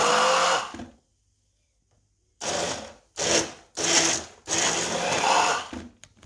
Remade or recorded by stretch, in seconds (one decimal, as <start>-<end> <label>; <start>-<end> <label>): 0.0-6.3 recorded